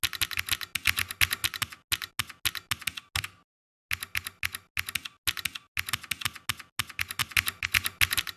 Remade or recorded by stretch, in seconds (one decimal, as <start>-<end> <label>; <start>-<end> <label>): 0.0-8.4 recorded